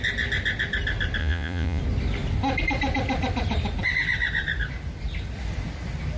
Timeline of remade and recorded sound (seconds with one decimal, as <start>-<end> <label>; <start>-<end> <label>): 0.0-1.2 recorded; 1.2-1.8 remade; 1.8-6.2 recorded